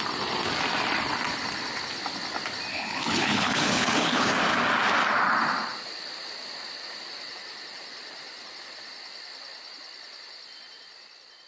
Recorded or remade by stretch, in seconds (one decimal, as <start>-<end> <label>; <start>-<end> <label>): 0.0-2.7 recorded; 2.7-4.3 remade; 4.3-11.5 recorded